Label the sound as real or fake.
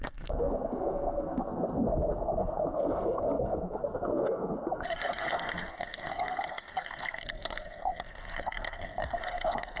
fake